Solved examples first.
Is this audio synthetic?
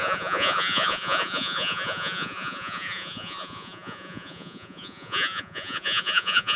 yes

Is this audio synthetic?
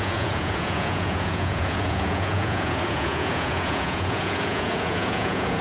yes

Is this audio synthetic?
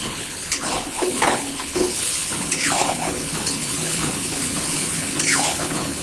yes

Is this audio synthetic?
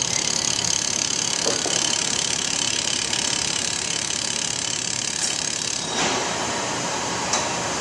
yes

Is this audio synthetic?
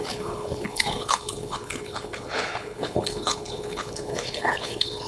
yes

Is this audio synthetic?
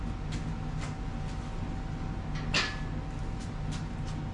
no